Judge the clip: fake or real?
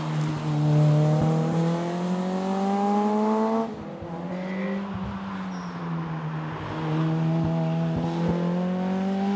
real